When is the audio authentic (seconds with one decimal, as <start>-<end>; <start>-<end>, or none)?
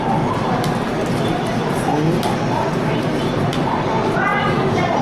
0.0-4.3